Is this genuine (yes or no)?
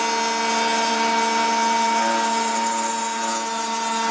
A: yes